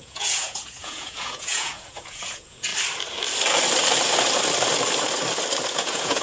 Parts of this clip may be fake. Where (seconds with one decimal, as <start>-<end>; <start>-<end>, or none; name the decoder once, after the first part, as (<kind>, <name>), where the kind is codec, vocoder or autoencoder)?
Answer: 0.0-2.7 (vocoder, Vocos); 5.7-6.2

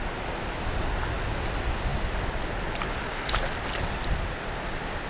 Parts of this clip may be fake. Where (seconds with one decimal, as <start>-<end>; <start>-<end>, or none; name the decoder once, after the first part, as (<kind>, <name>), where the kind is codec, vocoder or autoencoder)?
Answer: none

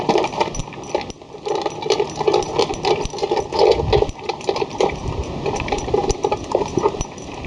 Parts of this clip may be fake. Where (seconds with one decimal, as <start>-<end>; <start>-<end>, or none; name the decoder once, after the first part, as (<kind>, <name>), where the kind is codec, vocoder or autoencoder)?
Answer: 0.0-0.6 (vocoder, BigVGAN v2); 4.4-7.5